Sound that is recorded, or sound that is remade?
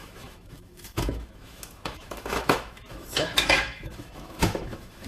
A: remade